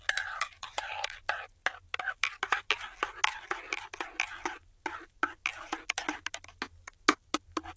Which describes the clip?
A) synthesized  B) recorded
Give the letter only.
B